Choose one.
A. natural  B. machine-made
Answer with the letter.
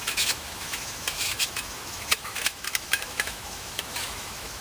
B